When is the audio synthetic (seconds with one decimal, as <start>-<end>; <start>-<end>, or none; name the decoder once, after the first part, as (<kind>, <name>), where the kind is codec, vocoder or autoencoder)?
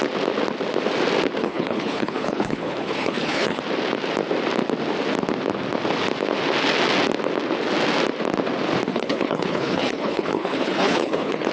1.4-3.6 (codec, HILCodec); 8.9-11.5